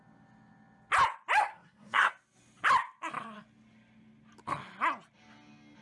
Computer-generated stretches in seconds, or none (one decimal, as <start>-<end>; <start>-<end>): 1.4-2.1